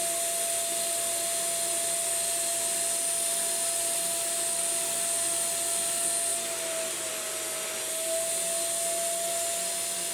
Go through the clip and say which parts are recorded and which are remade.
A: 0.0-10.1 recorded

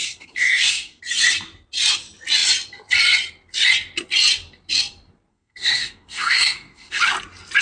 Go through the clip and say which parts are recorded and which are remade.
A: 0.0-1.0 remade; 1.0-5.3 recorded; 5.3-7.0 remade; 7.0-7.6 recorded

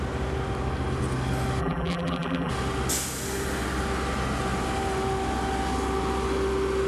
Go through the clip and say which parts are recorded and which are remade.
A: 0.0-1.6 recorded; 1.6-2.5 remade; 2.5-6.9 recorded

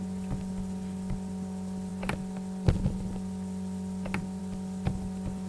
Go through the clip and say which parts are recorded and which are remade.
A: 0.0-5.5 recorded